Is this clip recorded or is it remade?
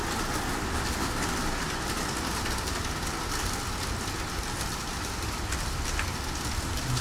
recorded